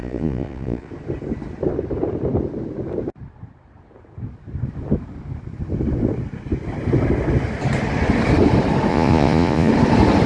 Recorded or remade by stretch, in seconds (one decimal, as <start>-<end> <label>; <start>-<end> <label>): 0.0-0.9 remade; 0.9-8.9 recorded; 8.9-9.7 remade; 9.7-10.3 recorded